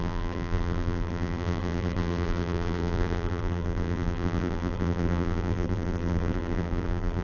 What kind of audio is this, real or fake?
fake